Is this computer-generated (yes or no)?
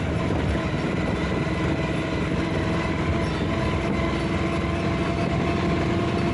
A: no